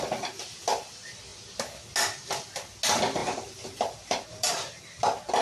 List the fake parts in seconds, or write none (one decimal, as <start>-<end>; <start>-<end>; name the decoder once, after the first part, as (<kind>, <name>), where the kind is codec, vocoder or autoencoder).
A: 3.2-4.8 (vocoder, BigVGAN v2)